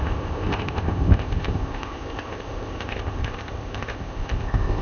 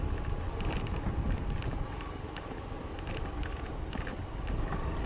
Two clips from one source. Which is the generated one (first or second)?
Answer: first